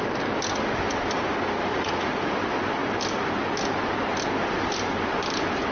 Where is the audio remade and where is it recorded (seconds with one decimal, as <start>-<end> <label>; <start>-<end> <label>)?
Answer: 0.0-1.7 recorded; 1.7-2.2 remade; 2.2-5.7 recorded